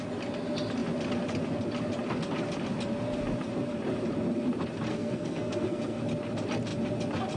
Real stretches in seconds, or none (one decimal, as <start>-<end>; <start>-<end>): 0.0-4.9; 6.0-7.4